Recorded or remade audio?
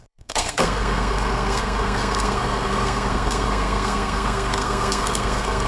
remade